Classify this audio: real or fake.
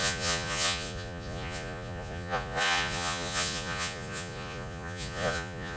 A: fake